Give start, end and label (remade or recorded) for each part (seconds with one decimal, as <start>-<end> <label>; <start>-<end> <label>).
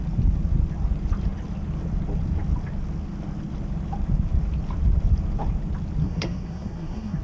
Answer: 0.0-6.0 recorded; 6.0-7.2 remade